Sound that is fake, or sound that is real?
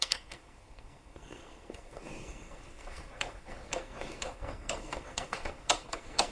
fake